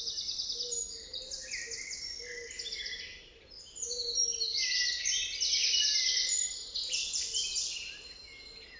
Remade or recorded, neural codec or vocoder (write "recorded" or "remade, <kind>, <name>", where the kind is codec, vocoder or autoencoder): recorded